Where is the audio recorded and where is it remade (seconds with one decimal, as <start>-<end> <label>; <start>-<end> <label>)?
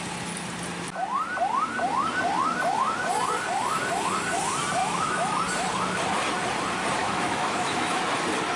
0.0-4.8 recorded; 4.8-5.4 remade; 5.4-7.0 recorded; 7.0-8.0 remade; 8.0-8.6 recorded